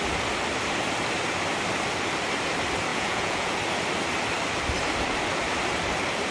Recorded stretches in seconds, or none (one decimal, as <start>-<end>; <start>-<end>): 0.0-2.9; 3.5-6.3